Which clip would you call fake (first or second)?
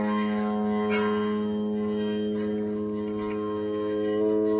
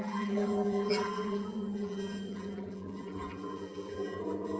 second